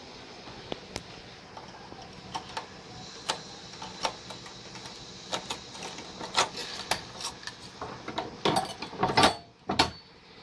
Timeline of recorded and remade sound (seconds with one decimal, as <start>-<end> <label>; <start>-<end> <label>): 0.0-0.6 remade; 0.6-10.4 recorded